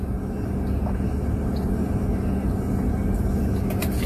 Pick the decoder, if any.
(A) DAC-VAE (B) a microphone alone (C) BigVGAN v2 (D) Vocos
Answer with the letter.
B